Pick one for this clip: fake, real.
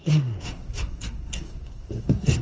fake